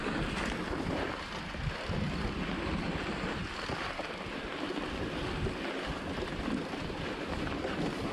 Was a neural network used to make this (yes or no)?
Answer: no